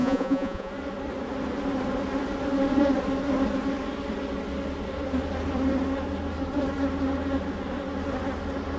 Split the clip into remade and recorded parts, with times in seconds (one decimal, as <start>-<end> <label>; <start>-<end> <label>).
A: 0.0-0.7 remade; 0.7-8.8 recorded